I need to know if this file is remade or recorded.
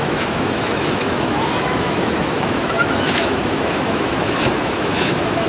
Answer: remade